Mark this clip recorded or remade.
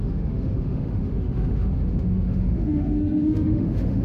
remade